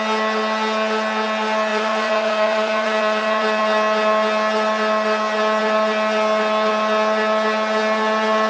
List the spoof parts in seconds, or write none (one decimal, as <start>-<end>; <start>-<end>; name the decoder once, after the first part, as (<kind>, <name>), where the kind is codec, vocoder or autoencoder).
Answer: 1.7-3.6 (vocoder, Vocos)